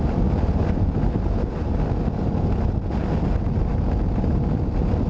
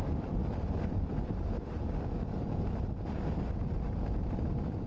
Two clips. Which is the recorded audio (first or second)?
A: first